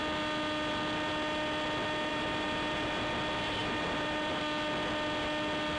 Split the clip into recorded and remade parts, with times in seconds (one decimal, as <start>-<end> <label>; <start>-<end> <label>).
0.0-2.1 recorded; 2.1-3.0 remade; 3.0-3.6 recorded; 3.6-4.4 remade; 4.4-5.8 recorded